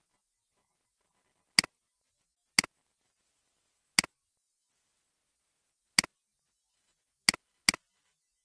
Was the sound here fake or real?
real